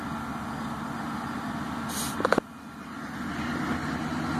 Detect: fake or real real